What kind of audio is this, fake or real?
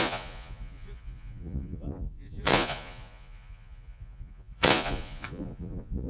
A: fake